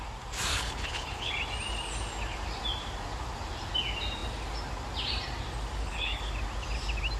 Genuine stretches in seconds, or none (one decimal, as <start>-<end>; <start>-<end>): 0.0-0.5; 1.3-5.8; 6.3-7.2